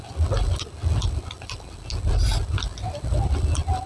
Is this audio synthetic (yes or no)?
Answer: no